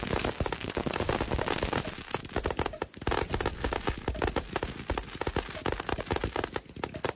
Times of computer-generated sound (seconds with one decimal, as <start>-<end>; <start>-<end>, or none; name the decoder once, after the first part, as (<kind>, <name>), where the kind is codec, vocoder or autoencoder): none